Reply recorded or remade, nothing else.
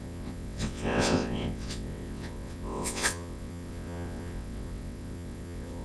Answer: remade